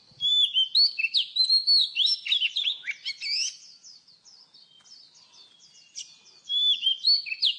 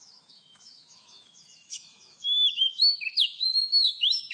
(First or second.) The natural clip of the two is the first